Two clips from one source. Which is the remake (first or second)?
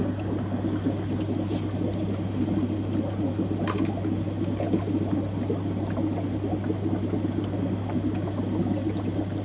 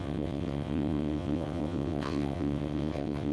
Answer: second